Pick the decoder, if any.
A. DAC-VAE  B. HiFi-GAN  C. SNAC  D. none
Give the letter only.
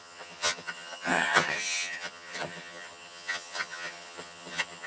B